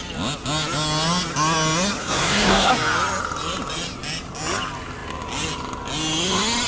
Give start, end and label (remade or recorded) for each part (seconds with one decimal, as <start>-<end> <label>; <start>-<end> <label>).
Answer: 0.0-2.0 recorded; 2.0-2.7 remade; 2.7-6.7 recorded